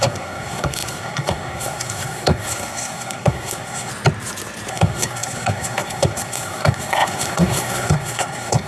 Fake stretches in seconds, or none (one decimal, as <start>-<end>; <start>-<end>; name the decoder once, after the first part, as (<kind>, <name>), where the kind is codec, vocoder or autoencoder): 0.0-3.9 (codec, SNAC); 4.7-8.7